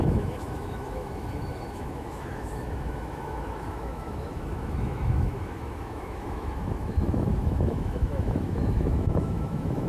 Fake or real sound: fake